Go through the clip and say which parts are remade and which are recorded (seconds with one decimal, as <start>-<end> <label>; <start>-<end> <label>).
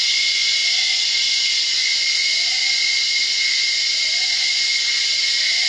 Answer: 0.0-1.9 remade; 1.9-4.2 recorded; 4.2-4.9 remade; 4.9-5.7 recorded